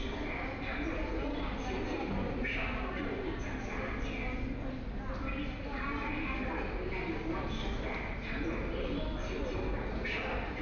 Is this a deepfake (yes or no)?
no